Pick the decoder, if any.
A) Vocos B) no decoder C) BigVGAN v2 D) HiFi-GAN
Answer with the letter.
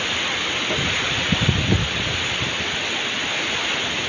B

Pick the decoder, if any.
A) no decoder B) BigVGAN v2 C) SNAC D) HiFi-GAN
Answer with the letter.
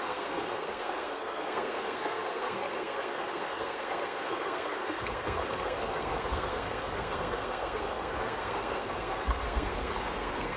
C